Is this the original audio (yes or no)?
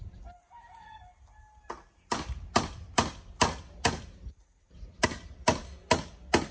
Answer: yes